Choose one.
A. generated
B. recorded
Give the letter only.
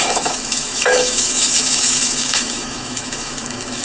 A